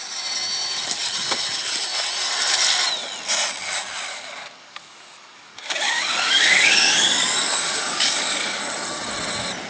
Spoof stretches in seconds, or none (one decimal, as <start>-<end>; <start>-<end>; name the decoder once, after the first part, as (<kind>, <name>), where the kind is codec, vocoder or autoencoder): 4.1-8.6 (codec, DAC)